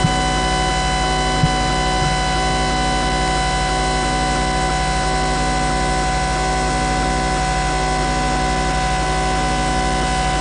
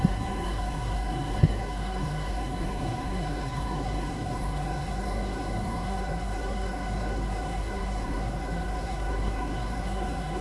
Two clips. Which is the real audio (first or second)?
first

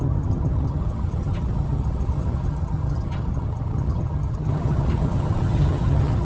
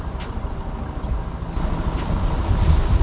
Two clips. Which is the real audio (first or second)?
second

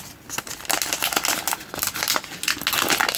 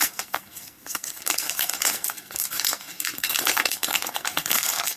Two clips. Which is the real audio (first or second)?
first